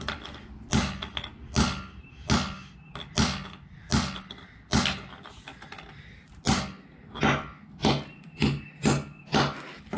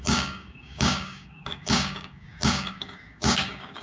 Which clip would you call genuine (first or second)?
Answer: first